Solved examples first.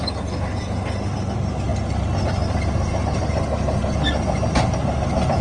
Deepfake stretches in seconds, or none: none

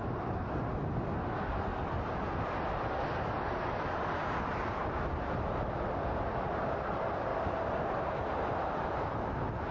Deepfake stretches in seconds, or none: none

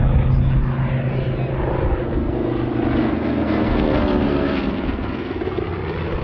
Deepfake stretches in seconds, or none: 2.0-2.5 (codec, SNAC); 3.0-5.6

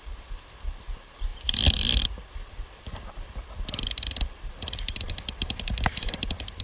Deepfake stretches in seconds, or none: none

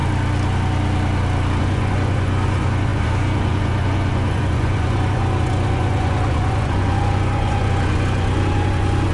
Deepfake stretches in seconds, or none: 1.6-9.1 (vocoder, Vocos)

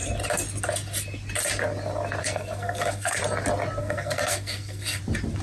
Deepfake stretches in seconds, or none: 2.2-3.2 (codec, SNAC); 3.8-5.0

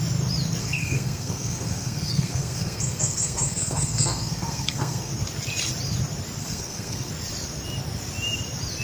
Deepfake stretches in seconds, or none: 0.6-5.1 (codec, SNAC); 6.4-7.1

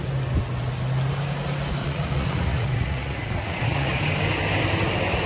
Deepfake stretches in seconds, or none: 1.8-4.0 (vocoder, Vocos)